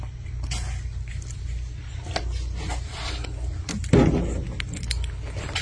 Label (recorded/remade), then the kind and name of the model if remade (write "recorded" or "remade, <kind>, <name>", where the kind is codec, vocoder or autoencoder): recorded